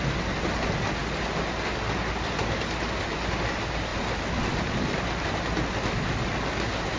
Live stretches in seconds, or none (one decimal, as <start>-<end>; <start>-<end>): 0.0-3.9; 5.3-7.0